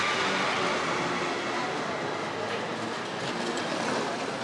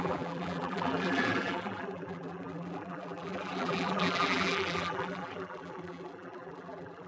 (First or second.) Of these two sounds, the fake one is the second